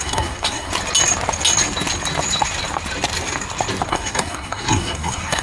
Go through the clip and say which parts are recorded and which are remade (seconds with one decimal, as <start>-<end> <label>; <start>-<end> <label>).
0.0-0.7 remade; 0.7-3.9 recorded; 3.9-5.4 remade